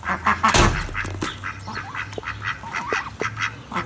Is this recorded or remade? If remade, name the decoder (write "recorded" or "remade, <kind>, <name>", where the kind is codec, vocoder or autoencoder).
recorded